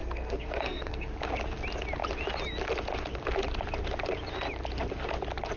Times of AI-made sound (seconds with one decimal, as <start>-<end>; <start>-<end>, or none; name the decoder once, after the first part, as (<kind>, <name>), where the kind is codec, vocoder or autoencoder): 0.0-1.1 (codec, SNAC)